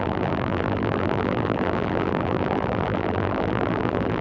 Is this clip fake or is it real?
fake